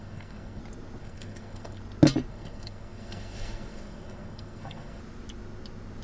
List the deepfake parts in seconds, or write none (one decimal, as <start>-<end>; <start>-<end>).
0.0-0.6; 1.0-1.8; 2.3-5.0